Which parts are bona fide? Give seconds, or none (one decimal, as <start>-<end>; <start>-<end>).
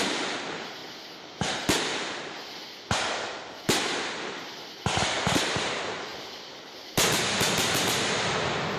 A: 0.0-8.8